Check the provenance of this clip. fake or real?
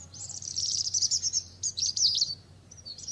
fake